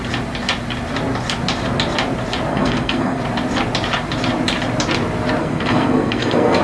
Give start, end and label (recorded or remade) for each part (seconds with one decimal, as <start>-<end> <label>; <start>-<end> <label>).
0.0-2.5 recorded; 2.5-3.2 remade; 3.2-5.4 recorded; 5.4-6.6 remade